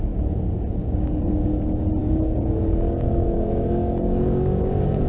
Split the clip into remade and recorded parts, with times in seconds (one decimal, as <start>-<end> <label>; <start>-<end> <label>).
0.0-0.8 recorded; 0.8-1.5 remade; 1.5-2.0 recorded; 2.0-5.1 remade